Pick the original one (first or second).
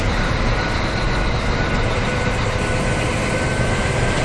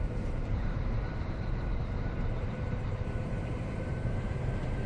first